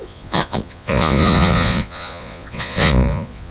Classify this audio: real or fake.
fake